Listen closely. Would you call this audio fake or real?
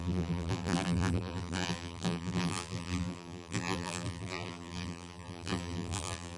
fake